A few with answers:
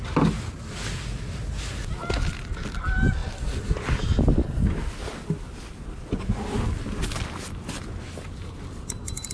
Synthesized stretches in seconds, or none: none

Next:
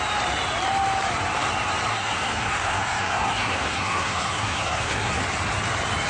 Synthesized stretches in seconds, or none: 1.9-5.2 (codec, SNAC)

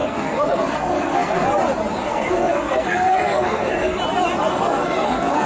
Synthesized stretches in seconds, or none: 0.0-1.5 (codec, SNAC); 2.0-4.0; 4.5-5.5

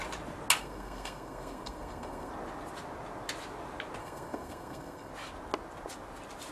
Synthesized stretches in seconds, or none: 0.6-2.3 (codec, SNAC); 4.0-5.1

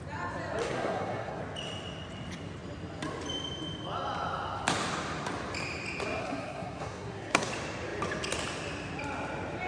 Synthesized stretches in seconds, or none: 0.6-1.4 (codec, SNAC); 6.2-7.5